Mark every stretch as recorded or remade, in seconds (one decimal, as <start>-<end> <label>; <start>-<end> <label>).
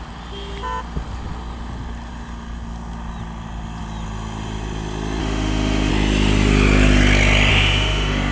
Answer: 0.0-5.2 recorded; 5.2-5.9 remade; 5.9-7.5 recorded; 7.5-8.3 remade